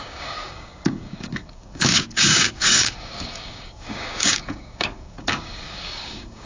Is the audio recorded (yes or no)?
no